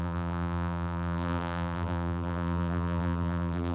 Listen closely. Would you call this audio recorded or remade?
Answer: remade